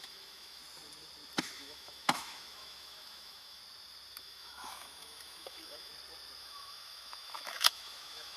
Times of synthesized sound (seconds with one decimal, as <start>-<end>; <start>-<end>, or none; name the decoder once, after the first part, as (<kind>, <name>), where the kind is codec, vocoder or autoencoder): 0.0-0.6 (autoencoder, DAC-VAE); 1.4-3.6; 4.2-5.9; 6.4-8.4